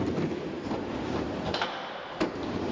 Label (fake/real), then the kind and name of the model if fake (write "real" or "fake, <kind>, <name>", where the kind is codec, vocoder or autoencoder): real